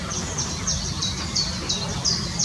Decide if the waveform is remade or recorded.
recorded